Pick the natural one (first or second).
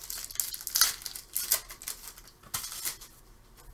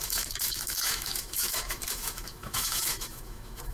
first